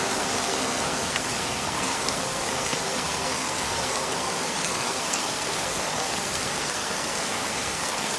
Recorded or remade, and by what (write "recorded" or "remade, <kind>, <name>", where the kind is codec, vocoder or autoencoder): remade, codec, SNAC